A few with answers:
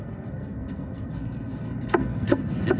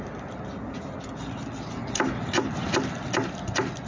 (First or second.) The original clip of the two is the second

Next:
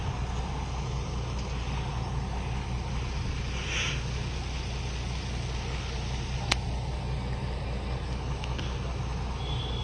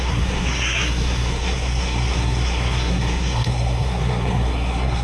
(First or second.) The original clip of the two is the first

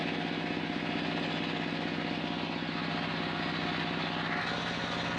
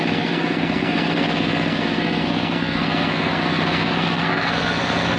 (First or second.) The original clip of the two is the first